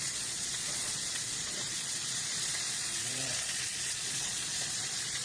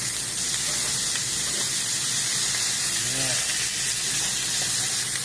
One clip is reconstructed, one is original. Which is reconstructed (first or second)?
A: first